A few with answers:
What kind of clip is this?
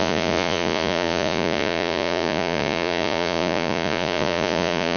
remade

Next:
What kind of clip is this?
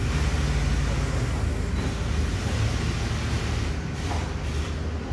recorded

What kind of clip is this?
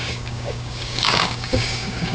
remade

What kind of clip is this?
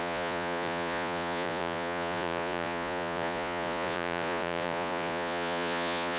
remade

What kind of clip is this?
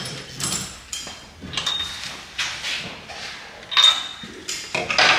recorded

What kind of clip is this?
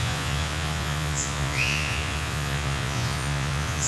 remade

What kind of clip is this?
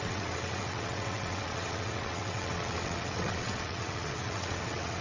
remade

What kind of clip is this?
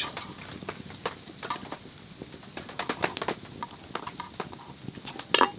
recorded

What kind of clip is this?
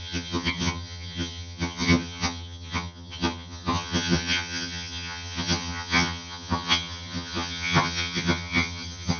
remade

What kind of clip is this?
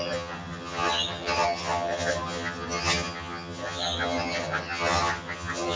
remade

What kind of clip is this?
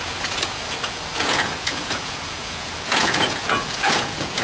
remade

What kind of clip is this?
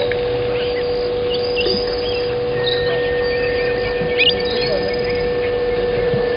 recorded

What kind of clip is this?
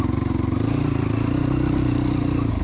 recorded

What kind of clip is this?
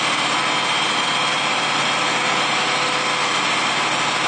recorded